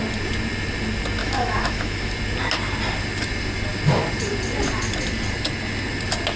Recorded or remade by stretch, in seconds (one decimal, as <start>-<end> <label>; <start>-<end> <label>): 0.0-1.2 recorded; 1.2-2.1 remade; 2.1-6.4 recorded